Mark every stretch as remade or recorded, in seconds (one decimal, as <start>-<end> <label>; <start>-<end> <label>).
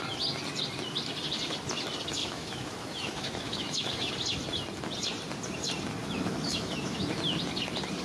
0.0-2.2 recorded; 2.2-4.1 remade; 4.1-6.0 recorded; 6.0-7.1 remade; 7.1-8.0 recorded